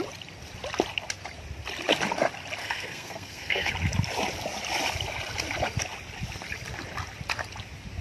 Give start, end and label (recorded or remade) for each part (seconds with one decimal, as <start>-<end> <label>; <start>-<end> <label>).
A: 0.0-2.6 recorded; 2.6-3.7 remade; 3.7-8.0 recorded